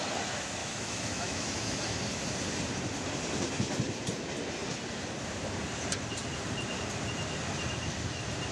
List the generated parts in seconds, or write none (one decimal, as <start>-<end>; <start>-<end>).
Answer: 0.6-1.8